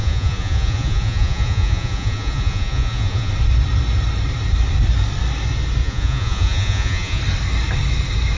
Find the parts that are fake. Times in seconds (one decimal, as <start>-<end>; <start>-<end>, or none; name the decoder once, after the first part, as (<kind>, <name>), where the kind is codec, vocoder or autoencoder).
0.0-3.3 (vocoder, Vocos); 5.8-7.2